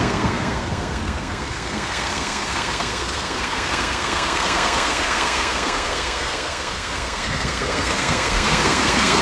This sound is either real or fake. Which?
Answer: fake